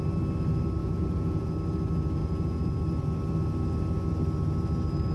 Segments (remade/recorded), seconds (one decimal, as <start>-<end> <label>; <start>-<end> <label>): 0.0-0.8 recorded; 0.8-1.5 remade; 1.5-2.2 recorded; 2.2-2.8 remade; 2.8-5.1 recorded